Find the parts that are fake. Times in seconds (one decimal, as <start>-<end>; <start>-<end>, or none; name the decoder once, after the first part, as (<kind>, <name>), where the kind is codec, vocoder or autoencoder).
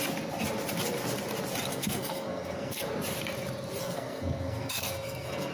1.7-2.9 (codec, SNAC); 3.8-5.5